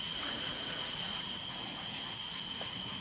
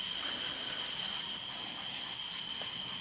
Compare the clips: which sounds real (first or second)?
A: second